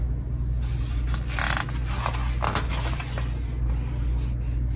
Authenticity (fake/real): real